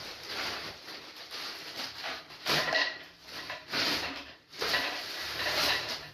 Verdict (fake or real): fake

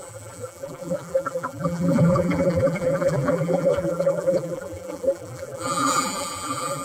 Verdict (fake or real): fake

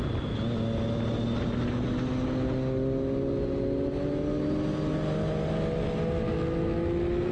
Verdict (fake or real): real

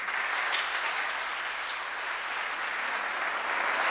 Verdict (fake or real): real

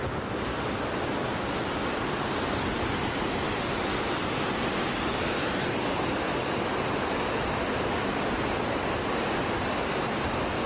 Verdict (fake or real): real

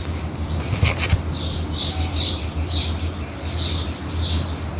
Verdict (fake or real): real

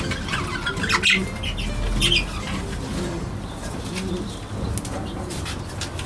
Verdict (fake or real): real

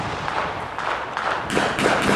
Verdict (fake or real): real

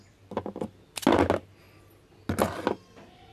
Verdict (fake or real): real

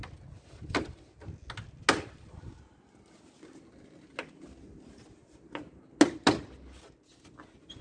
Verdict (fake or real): real